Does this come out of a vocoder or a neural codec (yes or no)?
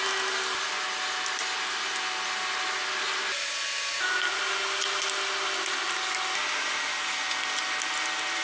no